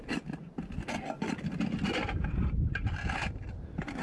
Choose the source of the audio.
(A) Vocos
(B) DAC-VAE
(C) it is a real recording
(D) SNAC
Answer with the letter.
C